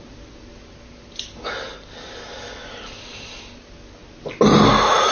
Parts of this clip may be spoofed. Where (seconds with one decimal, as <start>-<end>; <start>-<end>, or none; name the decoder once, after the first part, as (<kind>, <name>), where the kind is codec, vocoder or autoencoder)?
none